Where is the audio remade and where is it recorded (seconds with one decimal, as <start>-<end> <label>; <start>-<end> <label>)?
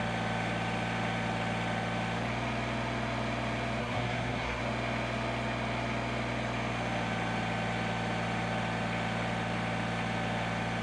0.0-3.8 recorded; 3.8-4.6 remade; 4.6-10.8 recorded